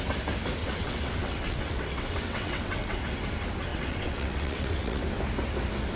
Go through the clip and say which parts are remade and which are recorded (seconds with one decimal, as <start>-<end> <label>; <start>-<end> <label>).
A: 0.0-0.6 recorded; 0.6-3.0 remade; 3.0-3.7 recorded; 3.7-5.0 remade; 5.0-6.0 recorded